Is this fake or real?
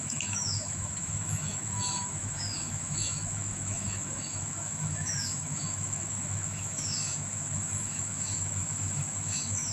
fake